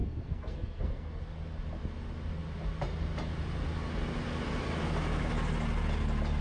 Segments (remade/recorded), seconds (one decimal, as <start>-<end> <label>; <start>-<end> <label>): 0.0-1.2 remade; 1.2-6.4 recorded